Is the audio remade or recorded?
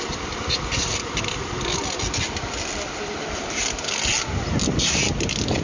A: recorded